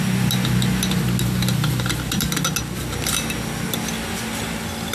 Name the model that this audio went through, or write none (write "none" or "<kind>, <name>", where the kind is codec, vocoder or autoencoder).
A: none